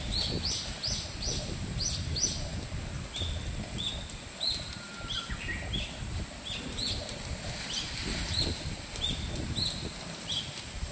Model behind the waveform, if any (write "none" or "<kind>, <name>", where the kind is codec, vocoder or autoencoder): none